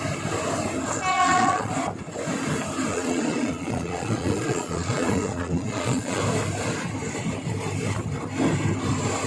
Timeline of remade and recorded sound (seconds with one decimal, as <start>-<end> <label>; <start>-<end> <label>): 0.0-1.1 recorded; 1.1-1.7 remade; 1.7-2.9 recorded; 2.9-6.2 remade; 6.2-9.3 recorded